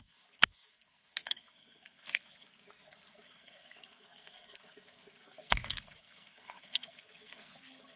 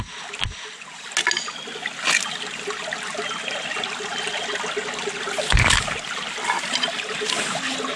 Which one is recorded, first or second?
second